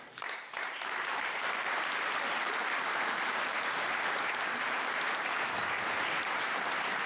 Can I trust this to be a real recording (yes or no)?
no